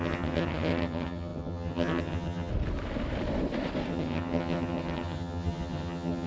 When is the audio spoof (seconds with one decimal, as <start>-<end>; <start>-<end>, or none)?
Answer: 0.0-2.5; 3.9-6.3